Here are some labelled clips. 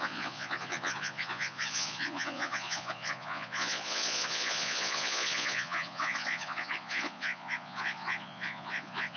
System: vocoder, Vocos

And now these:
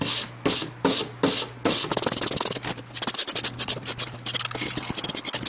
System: none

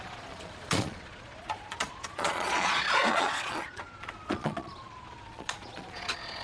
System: vocoder, Vocos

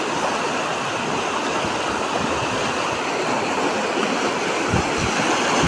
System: none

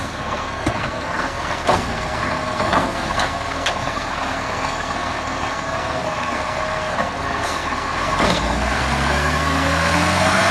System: codec, SNAC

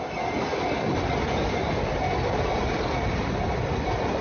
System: none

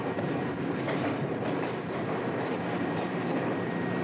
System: vocoder, BigVGAN v2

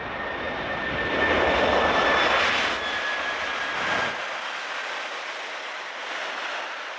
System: none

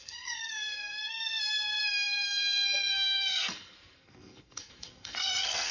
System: codec, SNAC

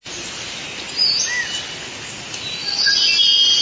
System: none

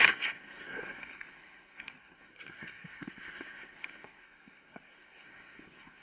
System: codec, SNAC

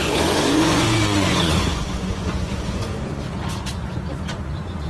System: vocoder, Vocos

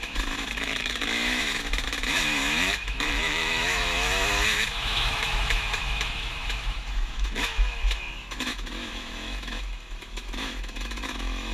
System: autoencoder, DAC-VAE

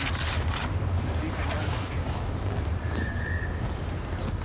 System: none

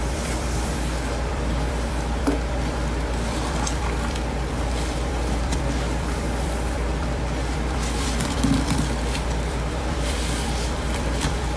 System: vocoder, BigVGAN v2